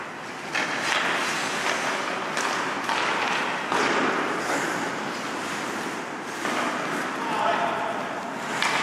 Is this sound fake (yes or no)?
no